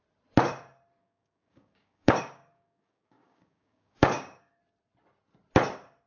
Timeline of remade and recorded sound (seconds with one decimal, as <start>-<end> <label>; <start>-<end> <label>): 0.0-1.0 recorded; 1.0-4.6 remade; 4.6-6.1 recorded